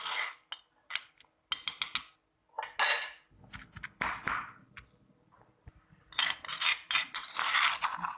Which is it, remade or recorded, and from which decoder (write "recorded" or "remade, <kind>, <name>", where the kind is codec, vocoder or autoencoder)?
recorded